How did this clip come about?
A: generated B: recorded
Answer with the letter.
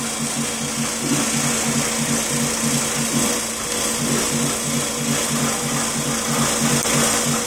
B